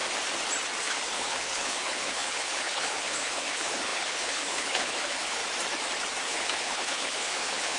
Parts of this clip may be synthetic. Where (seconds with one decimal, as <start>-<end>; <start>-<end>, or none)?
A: 0.8-5.4; 6.2-7.8